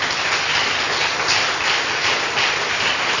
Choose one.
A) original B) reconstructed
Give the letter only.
A